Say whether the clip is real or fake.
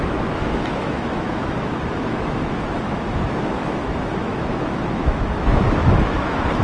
fake